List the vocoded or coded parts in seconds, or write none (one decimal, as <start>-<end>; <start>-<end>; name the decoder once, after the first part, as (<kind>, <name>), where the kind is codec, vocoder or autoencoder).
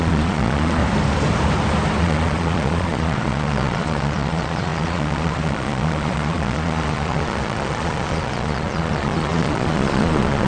0.0-0.8 (vocoder, Vocos); 2.0-10.5